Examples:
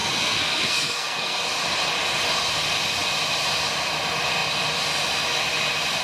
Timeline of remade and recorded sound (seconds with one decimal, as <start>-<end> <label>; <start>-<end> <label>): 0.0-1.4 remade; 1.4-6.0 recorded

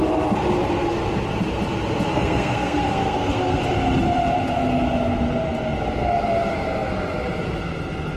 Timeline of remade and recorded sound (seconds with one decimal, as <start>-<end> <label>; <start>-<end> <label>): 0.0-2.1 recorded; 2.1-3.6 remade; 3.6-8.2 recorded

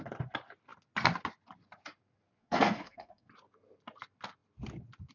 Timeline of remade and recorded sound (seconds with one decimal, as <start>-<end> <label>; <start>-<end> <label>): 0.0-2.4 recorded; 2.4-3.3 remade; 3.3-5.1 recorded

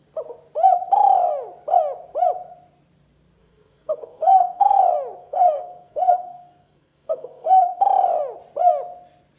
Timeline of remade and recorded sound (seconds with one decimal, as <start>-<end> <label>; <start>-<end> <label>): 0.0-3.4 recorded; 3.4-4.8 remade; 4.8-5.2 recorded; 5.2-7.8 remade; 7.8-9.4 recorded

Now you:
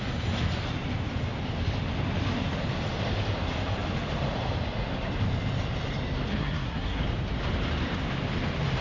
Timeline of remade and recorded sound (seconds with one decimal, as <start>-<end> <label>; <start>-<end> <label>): 0.0-6.3 recorded; 6.3-7.0 remade; 7.0-8.8 recorded

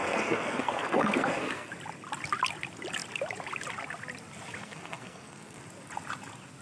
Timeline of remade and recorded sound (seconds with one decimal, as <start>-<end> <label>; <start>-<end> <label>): 0.0-1.7 remade; 1.7-4.6 recorded; 4.6-5.6 remade; 5.6-6.6 recorded